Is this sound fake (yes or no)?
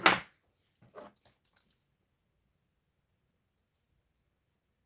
no